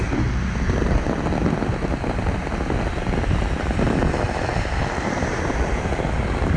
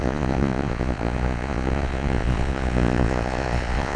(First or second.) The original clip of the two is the first